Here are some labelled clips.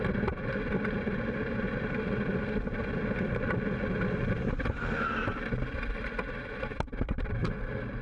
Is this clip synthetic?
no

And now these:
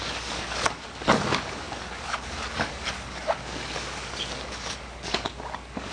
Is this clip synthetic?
yes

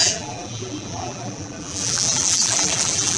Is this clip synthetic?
yes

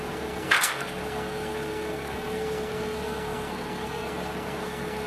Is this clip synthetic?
yes